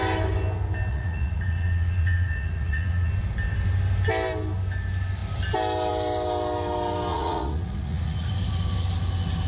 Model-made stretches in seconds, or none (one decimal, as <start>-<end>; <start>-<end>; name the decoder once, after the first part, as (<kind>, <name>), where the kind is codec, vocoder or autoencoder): 0.9-3.1 (vocoder, Vocos); 7.1-8.3